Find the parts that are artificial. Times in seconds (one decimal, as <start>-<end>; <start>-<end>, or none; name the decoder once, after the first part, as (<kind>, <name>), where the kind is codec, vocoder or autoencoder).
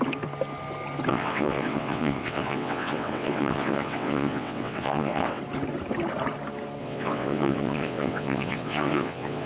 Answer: 1.1-5.4 (vocoder, WaveNeXt); 6.8-9.5